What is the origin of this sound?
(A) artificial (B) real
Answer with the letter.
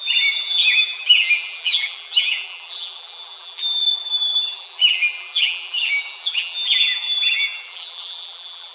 A